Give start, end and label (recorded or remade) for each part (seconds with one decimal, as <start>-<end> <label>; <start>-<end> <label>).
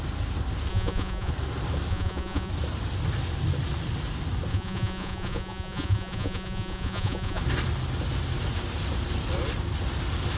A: 0.0-0.7 recorded; 0.7-1.3 remade; 1.3-1.9 recorded; 1.9-2.5 remade; 2.5-4.5 recorded; 4.5-7.4 remade; 7.4-10.4 recorded